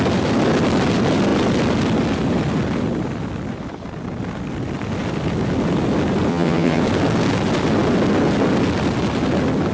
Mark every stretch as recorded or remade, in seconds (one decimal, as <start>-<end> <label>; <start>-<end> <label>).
0.0-6.3 recorded; 6.3-6.8 remade; 6.8-9.7 recorded